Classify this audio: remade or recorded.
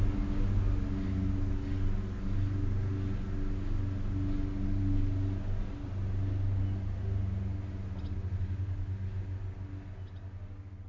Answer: recorded